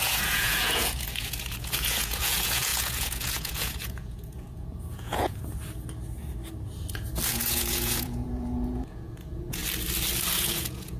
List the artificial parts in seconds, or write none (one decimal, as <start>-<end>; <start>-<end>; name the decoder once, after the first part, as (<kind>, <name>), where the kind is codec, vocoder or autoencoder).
0.0-5.4 (vocoder, Vocos); 7.3-9.6; 10.3-11.0